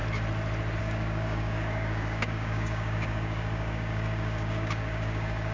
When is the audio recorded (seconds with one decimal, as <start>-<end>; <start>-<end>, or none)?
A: 0.0-0.8